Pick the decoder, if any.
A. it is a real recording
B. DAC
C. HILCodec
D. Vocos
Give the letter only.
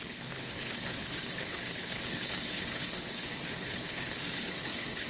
C